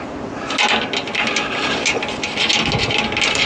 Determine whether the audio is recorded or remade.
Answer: recorded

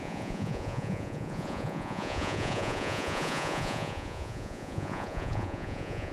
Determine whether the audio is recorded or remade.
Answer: remade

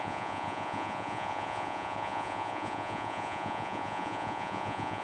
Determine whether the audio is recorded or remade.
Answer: remade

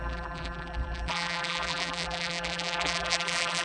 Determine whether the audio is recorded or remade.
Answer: remade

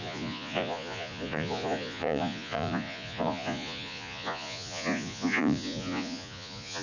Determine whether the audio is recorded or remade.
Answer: remade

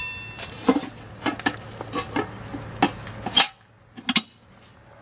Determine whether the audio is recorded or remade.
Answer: recorded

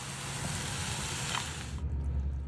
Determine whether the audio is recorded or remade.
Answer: recorded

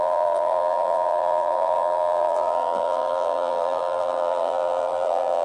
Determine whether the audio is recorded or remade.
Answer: remade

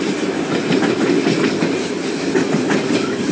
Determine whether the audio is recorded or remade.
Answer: recorded